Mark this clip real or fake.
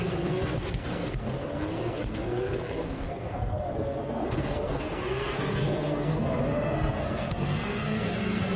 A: fake